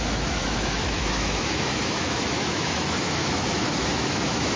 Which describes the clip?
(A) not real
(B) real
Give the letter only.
A